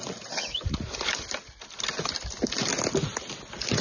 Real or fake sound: real